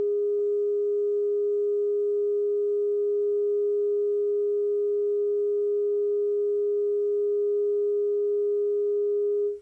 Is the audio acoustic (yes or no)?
no